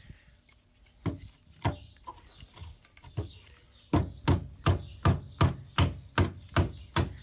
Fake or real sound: real